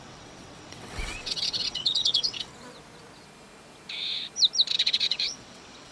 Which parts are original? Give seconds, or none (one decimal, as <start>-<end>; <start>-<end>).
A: 2.5-4.7